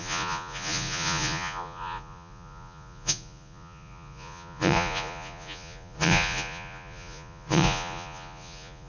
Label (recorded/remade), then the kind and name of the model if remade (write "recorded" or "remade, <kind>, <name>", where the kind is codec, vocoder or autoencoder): remade, vocoder, Vocos